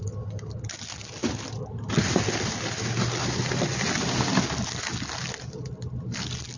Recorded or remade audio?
recorded